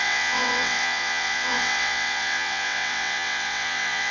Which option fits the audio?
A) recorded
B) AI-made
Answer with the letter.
B